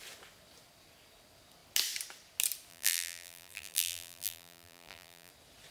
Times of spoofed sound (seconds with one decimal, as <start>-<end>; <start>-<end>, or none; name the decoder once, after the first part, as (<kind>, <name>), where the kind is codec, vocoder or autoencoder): 2.7-5.3 (vocoder, BigVGAN v2)